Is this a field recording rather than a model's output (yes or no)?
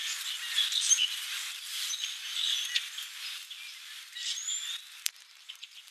no